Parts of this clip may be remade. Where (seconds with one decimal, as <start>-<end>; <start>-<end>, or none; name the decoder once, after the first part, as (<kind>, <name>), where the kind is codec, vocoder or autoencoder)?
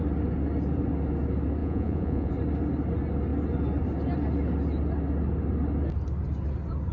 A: 1.6-2.3 (vocoder, Vocos)